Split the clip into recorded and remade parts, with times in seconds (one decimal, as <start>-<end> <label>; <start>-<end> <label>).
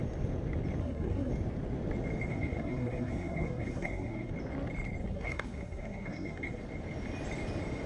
0.0-0.8 recorded; 0.8-1.3 remade; 1.3-2.3 recorded; 2.3-4.3 remade; 4.3-5.0 recorded; 5.0-6.6 remade; 6.6-7.9 recorded